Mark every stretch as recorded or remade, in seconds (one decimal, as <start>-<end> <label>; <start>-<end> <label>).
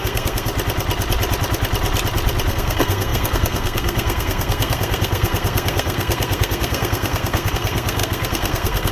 0.0-0.5 remade; 0.5-2.5 recorded; 2.5-8.9 remade